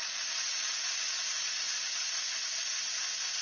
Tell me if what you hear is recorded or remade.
recorded